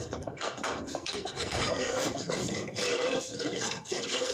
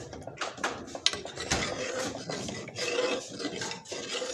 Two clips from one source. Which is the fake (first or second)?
first